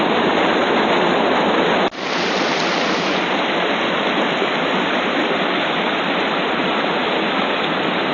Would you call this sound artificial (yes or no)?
no